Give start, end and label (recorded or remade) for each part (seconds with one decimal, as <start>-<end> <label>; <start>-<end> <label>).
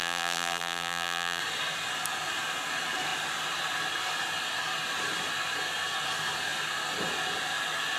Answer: 0.0-1.4 remade; 1.4-8.0 recorded